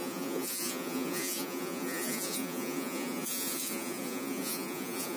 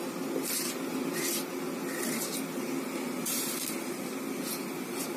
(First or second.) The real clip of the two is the second